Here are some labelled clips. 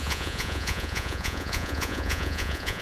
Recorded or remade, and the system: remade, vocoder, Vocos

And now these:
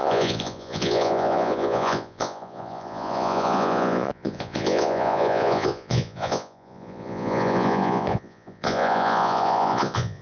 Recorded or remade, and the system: remade, vocoder, Vocos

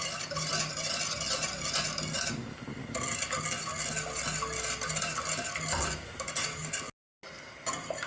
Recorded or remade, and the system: recorded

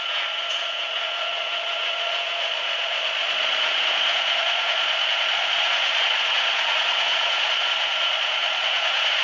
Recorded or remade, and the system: remade, vocoder, Vocos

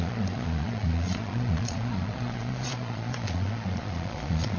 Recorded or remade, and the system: remade, vocoder, Vocos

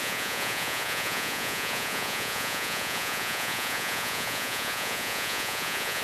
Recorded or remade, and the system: remade, vocoder, Vocos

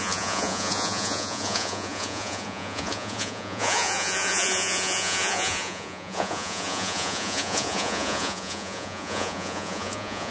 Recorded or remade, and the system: remade, vocoder, Vocos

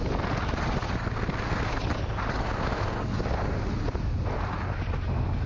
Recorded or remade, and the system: recorded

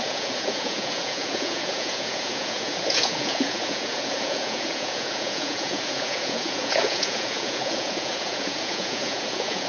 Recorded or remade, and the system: remade, vocoder, Vocos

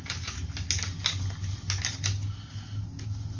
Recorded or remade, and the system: recorded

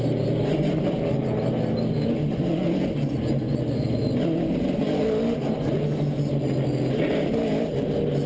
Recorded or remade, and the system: recorded